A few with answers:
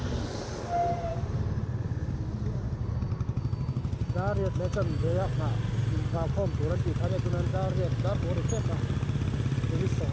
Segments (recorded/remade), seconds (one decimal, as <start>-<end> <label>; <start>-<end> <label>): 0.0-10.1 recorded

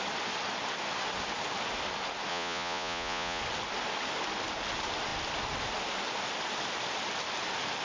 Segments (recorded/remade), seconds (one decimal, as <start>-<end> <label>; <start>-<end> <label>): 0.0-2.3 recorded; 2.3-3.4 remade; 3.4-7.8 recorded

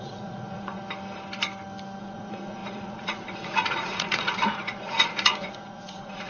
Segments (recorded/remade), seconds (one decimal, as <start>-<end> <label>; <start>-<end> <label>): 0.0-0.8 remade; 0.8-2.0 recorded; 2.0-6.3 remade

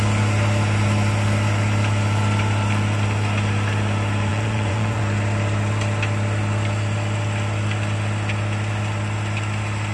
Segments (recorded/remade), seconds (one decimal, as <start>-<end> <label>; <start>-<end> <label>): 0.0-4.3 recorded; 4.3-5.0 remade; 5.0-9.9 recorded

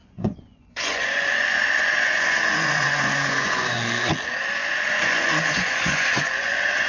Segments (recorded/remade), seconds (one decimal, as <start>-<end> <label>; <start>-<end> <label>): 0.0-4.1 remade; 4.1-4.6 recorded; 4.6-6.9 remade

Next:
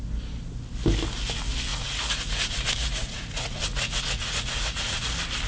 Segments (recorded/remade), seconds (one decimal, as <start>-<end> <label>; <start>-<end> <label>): 0.0-1.7 recorded; 1.7-5.0 remade; 5.0-5.5 recorded